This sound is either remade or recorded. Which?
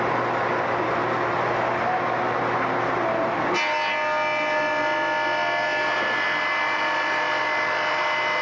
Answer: recorded